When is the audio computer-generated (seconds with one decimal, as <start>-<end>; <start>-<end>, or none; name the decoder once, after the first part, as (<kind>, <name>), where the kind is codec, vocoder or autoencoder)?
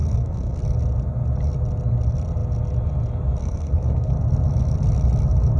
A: 0.0-0.6 (codec, SNAC); 3.4-4.1